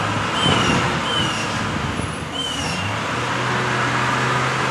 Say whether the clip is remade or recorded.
recorded